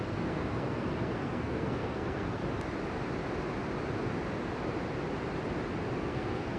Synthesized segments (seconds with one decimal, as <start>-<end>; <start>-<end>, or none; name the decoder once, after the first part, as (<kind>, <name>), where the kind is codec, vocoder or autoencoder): 0.0-2.4 (codec, SNAC); 6.0-6.6